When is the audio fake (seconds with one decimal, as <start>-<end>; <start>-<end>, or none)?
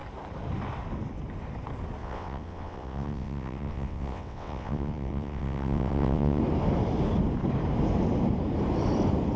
2.0-6.4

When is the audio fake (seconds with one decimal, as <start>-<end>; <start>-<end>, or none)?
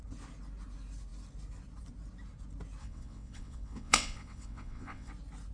2.8-5.1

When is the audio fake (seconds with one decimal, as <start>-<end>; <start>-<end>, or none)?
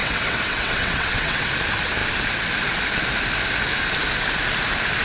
0.0-1.5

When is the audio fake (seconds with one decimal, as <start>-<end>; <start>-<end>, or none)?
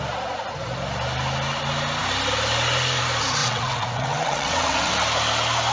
3.4-4.9